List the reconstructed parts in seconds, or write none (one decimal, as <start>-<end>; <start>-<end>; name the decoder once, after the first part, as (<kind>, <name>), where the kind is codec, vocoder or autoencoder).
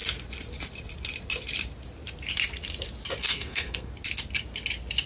3.2-3.9 (codec, SNAC)